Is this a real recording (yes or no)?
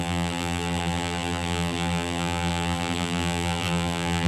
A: no